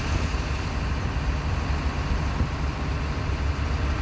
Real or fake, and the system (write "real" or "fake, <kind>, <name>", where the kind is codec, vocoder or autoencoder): real